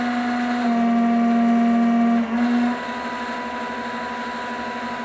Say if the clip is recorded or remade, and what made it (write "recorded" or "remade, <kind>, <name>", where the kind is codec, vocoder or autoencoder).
recorded